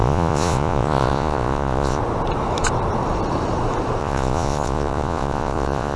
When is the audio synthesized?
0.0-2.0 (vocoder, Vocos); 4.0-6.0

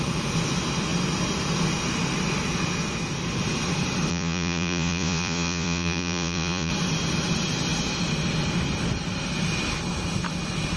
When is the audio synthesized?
4.1-6.7 (vocoder, Vocos)

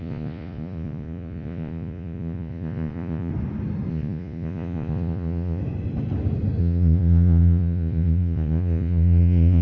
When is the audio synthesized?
0.0-3.3 (vocoder, Vocos); 3.9-5.6; 6.6-9.6

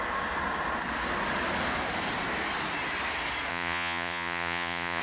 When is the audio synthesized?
3.5-5.0 (vocoder, Vocos)